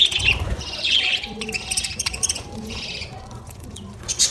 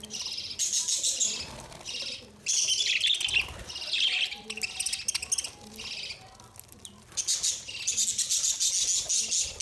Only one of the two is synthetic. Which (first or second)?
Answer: first